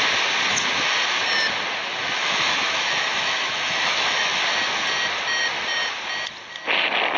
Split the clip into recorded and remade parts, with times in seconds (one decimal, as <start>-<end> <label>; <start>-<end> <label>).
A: 0.0-1.8 recorded; 1.8-4.4 remade; 4.4-7.2 recorded